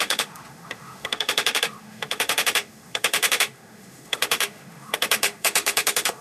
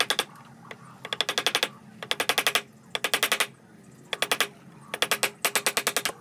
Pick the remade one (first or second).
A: first